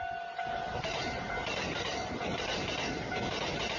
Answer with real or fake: real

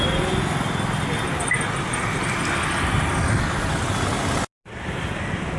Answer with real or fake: real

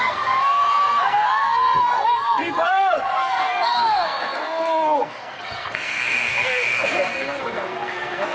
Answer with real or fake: fake